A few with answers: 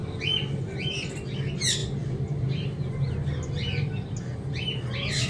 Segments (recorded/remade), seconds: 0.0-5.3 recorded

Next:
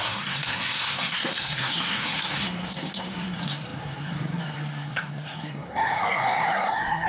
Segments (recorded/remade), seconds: 0.0-7.1 remade